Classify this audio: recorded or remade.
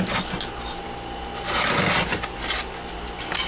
recorded